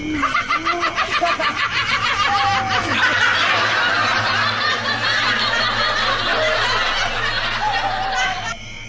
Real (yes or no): yes